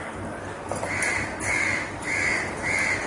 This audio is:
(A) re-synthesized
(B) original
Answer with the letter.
B